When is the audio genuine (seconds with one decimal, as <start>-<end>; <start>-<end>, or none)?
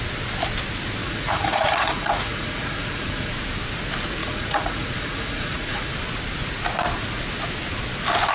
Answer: 0.0-1.0; 3.3-4.2; 5.9-8.3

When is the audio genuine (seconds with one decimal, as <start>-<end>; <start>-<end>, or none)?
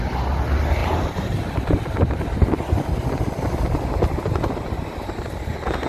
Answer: 0.0-5.9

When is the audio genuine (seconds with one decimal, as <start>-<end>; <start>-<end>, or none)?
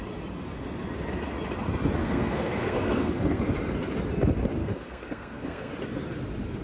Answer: 0.0-2.0; 3.4-4.6; 5.7-6.6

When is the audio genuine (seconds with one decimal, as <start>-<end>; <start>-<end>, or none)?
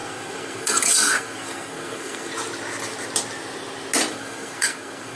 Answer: 2.3-4.1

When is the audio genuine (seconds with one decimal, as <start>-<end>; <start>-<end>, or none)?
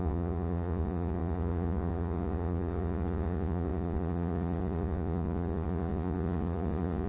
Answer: none